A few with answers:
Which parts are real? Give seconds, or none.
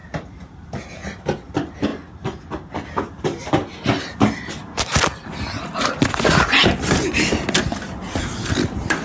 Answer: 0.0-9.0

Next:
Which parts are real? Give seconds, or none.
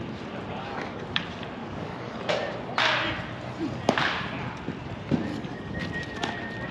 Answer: 0.0-0.6; 1.2-1.6; 2.2-5.3; 5.8-6.7